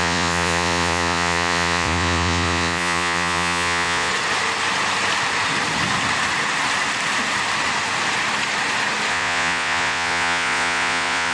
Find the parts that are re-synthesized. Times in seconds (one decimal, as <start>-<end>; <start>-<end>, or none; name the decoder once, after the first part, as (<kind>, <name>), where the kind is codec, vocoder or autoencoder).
0.0-4.1 (vocoder, Vocos); 9.1-11.3